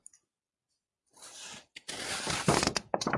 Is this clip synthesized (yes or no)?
no